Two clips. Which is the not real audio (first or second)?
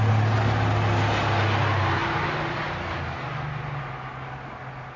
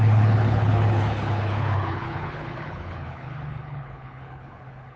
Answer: second